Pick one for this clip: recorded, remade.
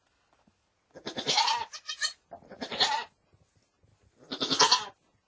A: recorded